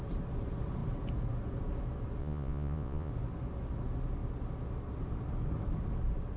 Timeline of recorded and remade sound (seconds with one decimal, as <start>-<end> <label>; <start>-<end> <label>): 0.0-2.2 recorded; 2.2-3.1 remade; 3.1-6.4 recorded